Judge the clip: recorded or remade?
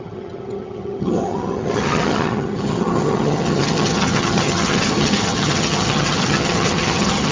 remade